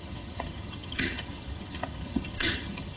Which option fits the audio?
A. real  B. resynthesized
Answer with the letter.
B